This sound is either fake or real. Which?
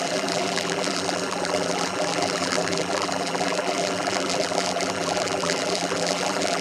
fake